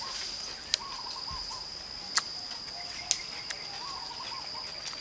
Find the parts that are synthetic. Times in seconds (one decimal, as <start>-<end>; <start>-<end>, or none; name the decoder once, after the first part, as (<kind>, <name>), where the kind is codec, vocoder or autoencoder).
none